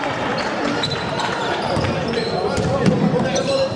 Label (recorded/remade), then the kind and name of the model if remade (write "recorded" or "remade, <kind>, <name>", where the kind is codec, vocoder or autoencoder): remade, vocoder, BigVGAN v2